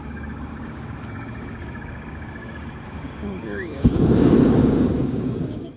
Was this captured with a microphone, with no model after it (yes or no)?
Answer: no